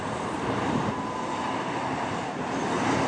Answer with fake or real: fake